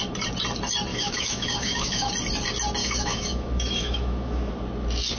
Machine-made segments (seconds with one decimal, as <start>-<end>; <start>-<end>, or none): 0.9-2.1; 2.8-4.5